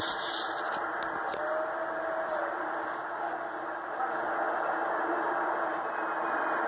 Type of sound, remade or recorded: recorded